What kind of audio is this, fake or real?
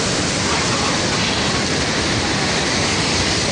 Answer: real